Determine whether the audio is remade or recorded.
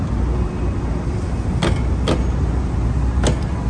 recorded